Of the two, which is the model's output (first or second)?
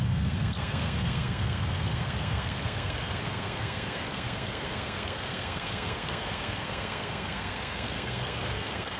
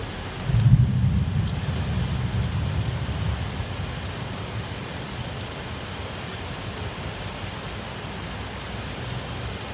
first